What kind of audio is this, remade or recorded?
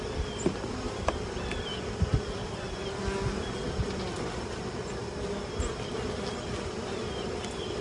recorded